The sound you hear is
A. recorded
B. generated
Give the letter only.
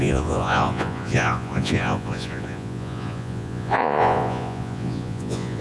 B